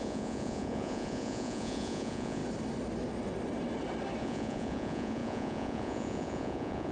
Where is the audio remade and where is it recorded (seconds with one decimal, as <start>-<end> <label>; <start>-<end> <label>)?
0.0-2.4 remade; 2.4-4.2 recorded; 4.2-6.9 remade